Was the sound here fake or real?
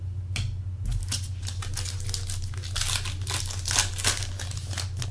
real